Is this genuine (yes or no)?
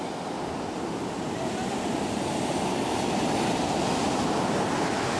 yes